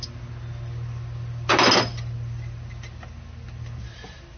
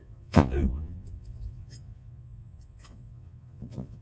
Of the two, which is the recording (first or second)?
first